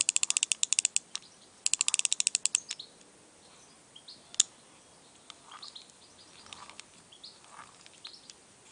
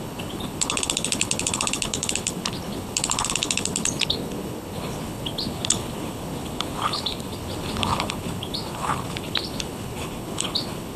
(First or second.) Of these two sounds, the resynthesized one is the second